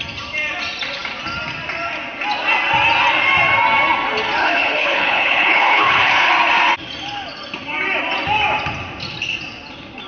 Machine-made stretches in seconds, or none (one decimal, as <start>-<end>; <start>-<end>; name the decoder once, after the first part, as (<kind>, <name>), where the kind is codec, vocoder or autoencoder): 4.4-6.3 (codec, HILCodec)